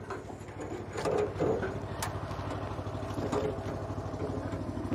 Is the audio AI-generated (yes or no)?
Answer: no